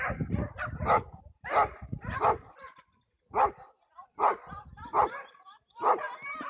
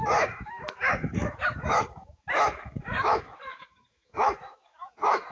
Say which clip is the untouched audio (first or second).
first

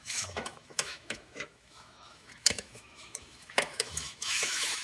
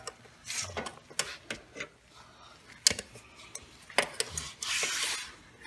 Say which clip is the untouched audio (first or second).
second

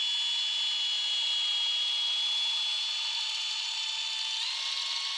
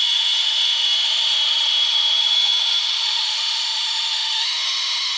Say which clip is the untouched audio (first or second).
first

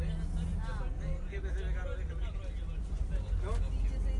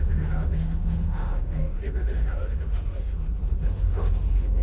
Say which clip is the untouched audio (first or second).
first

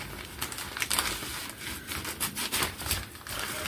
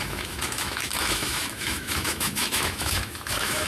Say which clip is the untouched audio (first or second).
first